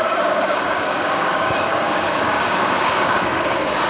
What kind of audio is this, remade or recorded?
remade